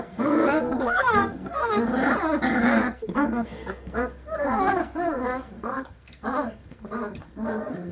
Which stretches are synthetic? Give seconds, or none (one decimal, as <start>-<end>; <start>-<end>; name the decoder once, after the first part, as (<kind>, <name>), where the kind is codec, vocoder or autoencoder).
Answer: 0.0-1.9 (codec, SNAC); 2.6-7.9